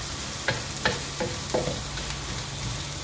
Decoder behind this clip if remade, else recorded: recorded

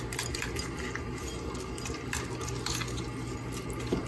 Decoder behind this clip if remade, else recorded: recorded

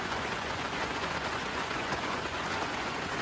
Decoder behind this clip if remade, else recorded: remade, vocoder, Vocos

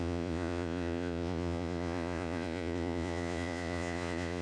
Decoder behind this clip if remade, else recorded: remade, vocoder, Vocos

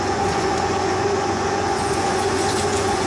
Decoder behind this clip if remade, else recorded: remade, vocoder, Vocos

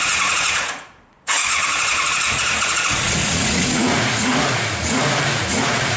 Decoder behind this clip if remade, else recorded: remade, vocoder, Vocos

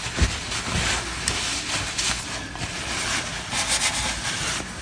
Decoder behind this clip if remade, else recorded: recorded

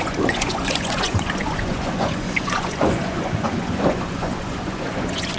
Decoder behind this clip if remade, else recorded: remade, vocoder, Vocos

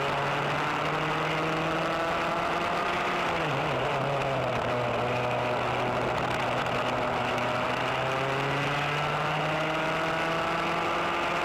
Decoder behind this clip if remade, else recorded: recorded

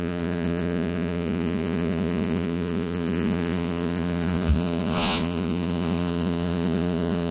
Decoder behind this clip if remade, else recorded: remade, vocoder, Vocos